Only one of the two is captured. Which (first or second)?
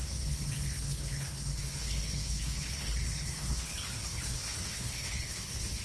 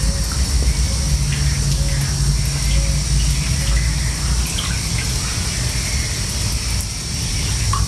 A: second